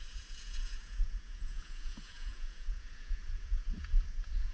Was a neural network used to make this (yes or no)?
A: yes